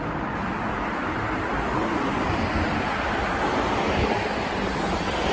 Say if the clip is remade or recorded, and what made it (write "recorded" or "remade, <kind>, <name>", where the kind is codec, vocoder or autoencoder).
recorded